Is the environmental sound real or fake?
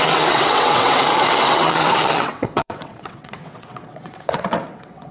fake